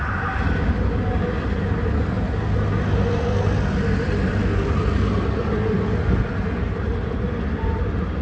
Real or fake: real